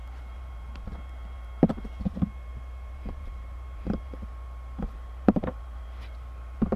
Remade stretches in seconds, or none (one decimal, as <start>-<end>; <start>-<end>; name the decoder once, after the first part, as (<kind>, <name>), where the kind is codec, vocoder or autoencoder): 0.0-0.7 (vocoder, BigVGAN v2); 2.5-6.0